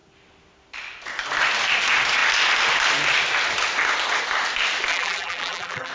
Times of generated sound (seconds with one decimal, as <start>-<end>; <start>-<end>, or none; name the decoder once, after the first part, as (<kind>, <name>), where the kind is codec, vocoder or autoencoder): 4.9-5.9 (vocoder, BigVGAN v2)